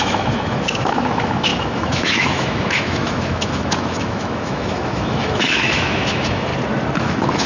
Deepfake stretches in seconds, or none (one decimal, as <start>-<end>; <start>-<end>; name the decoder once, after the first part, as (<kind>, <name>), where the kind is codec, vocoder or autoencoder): 0.0-6.5 (autoencoder, DAC-VAE); 7.0-7.5